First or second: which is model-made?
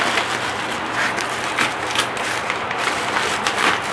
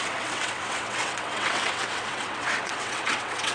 second